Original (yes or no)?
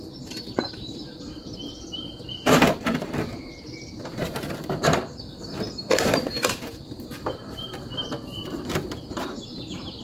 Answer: no